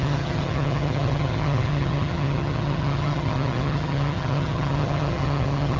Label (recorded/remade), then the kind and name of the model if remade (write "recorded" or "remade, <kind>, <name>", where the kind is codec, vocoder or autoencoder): remade, vocoder, HiFi-GAN